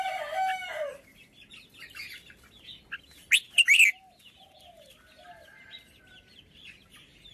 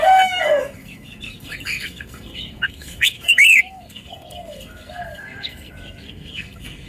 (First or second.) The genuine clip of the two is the first